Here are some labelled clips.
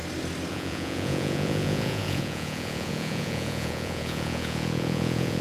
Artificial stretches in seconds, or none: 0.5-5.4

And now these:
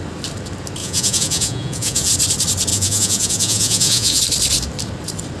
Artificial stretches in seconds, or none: 0.8-2.1; 2.7-4.2